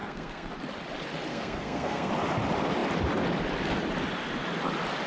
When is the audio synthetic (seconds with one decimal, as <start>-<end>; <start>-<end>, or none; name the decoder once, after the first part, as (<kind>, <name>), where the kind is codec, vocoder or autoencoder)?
0.0-0.5 (codec, SNAC); 1.3-2.1